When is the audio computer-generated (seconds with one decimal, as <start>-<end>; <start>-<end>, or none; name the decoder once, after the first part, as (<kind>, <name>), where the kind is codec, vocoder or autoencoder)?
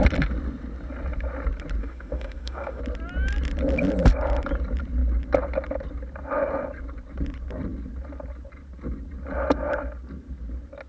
1.8-2.8 (autoencoder, DAC-VAE)